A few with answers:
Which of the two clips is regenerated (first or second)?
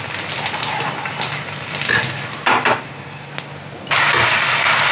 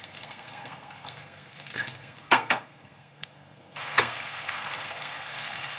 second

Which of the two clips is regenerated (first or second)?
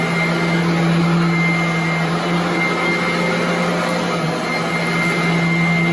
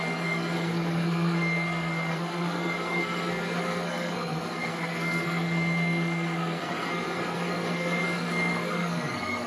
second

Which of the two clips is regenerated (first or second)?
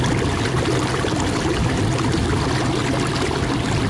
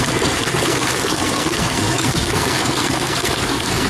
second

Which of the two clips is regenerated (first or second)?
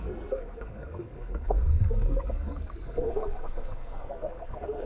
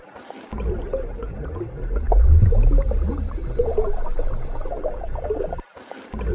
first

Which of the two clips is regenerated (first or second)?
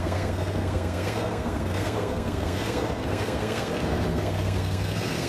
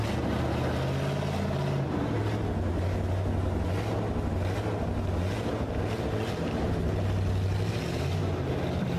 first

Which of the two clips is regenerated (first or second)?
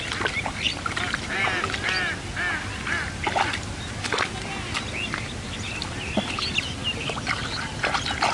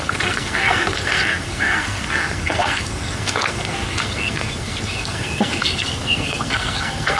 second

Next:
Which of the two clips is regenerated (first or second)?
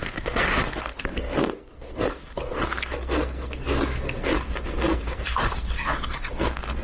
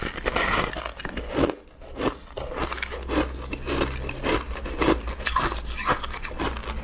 first